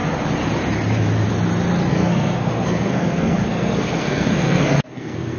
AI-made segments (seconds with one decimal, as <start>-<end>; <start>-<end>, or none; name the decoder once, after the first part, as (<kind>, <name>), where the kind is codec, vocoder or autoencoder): 1.9-5.4 (codec, SNAC)